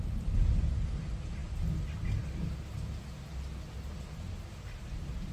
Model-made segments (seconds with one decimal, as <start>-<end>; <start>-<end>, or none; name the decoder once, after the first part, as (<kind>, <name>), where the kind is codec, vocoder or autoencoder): none